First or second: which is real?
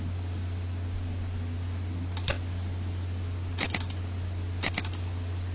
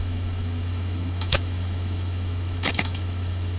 first